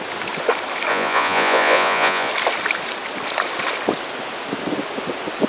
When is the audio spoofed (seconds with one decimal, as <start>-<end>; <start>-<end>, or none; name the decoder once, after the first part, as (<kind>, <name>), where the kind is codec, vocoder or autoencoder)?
0.9-2.3 (vocoder, Vocos)